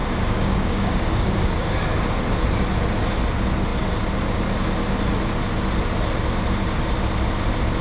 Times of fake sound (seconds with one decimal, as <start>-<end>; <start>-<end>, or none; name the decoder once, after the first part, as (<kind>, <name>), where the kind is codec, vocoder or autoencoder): 0.0-1.8 (codec, DAC)